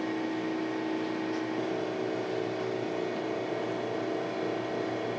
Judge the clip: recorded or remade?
recorded